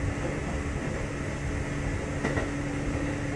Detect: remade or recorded recorded